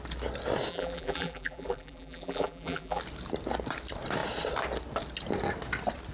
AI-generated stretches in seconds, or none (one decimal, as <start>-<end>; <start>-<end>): 0.7-3.0